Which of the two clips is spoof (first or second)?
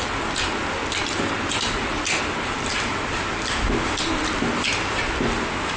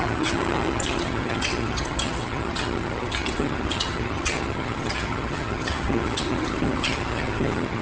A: second